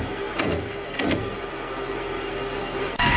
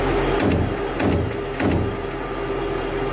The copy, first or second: first